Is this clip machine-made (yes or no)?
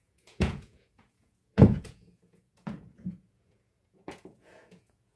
yes